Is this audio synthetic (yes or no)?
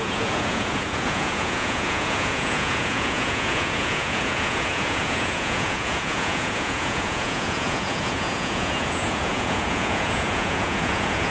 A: yes